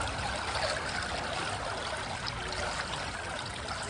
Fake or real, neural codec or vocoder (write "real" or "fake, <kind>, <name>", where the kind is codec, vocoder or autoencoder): real